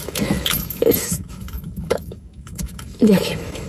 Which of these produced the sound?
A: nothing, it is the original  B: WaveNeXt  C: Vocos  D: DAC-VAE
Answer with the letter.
D